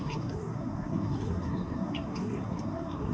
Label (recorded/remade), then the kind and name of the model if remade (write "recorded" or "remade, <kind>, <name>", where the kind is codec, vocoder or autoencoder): remade, codec, SNAC